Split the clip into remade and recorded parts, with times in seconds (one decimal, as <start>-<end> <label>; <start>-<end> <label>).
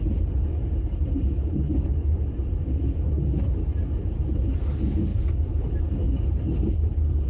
0.0-7.3 recorded